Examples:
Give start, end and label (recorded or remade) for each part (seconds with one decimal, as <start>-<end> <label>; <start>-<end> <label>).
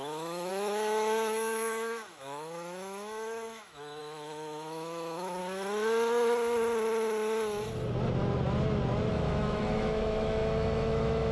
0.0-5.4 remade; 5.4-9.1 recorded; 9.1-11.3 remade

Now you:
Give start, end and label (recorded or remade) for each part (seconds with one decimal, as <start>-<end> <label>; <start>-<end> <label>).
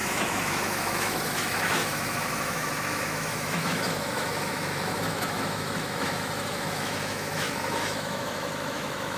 0.0-9.2 remade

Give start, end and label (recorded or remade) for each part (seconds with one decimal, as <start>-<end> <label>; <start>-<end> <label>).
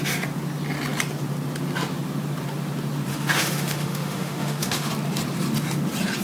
0.0-3.1 recorded; 3.1-4.9 remade; 4.9-6.2 recorded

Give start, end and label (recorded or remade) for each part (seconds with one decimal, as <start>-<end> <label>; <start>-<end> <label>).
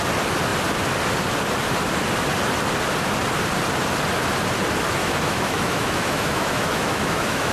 0.0-5.0 recorded; 5.0-7.5 remade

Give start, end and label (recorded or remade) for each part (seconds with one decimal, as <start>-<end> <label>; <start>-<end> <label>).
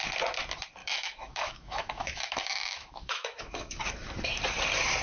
0.0-0.8 recorded; 0.8-3.8 remade; 3.8-5.0 recorded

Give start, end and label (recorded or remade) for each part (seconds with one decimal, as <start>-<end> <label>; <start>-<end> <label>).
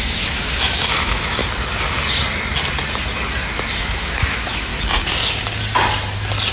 0.0-1.4 remade; 1.4-3.8 recorded; 3.8-4.7 remade; 4.7-6.5 recorded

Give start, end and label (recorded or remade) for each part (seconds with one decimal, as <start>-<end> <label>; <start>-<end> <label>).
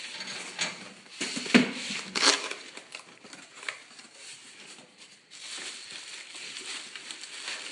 0.0-7.7 recorded